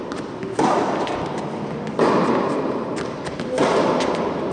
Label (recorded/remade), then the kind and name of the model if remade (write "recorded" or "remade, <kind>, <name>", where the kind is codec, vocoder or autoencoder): recorded